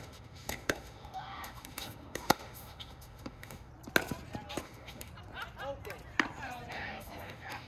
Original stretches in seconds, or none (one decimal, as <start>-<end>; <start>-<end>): 3.7-4.6; 5.1-6.7